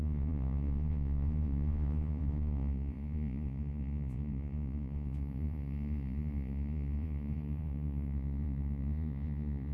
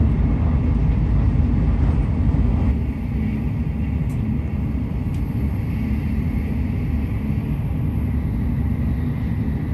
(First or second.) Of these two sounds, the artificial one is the first